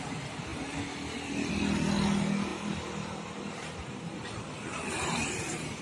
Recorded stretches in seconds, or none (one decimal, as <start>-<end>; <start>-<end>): 0.0-0.5; 1.5-2.5